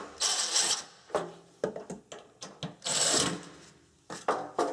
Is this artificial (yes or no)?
no